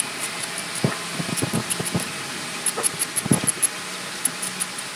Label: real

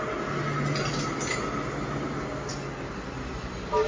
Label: real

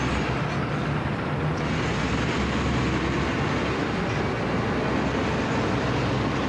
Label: real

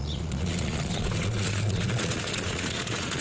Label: fake